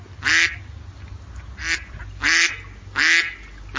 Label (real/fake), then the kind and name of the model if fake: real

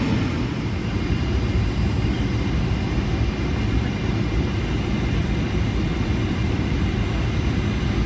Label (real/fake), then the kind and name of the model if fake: real